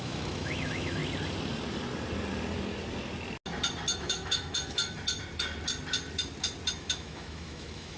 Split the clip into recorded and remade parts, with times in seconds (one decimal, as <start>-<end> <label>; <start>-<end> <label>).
0.0-1.0 remade; 1.0-4.0 recorded; 4.0-4.8 remade; 4.8-6.8 recorded; 6.8-8.0 remade

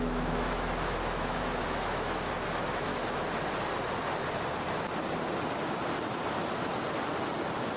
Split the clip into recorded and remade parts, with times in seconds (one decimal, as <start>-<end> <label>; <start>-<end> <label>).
0.0-2.9 remade; 2.9-7.8 recorded

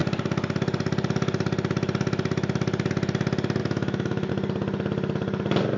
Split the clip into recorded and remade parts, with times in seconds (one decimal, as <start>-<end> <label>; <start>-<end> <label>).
0.0-3.6 recorded; 3.6-4.3 remade; 4.3-5.8 recorded

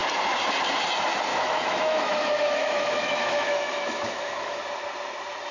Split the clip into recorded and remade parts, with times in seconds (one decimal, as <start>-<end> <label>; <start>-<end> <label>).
0.0-1.3 recorded; 1.3-4.6 remade; 4.6-5.5 recorded

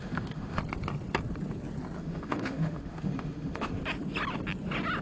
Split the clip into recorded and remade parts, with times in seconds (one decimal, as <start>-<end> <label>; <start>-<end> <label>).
0.0-0.6 remade; 0.6-2.0 recorded; 2.0-3.8 remade; 3.8-5.0 recorded

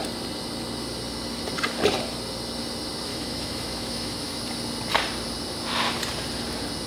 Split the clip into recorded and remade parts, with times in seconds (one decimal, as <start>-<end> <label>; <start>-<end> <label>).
0.0-3.1 recorded; 3.1-4.4 remade; 4.4-6.9 recorded